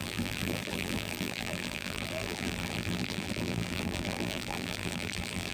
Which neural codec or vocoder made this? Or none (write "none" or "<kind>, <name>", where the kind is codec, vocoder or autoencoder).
vocoder, BigVGAN v2